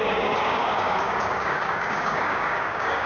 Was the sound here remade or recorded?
remade